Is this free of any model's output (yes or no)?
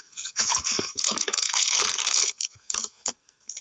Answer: no